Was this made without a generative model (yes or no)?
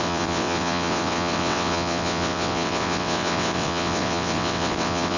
no